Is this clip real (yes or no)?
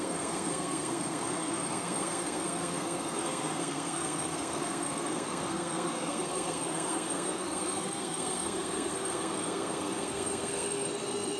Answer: no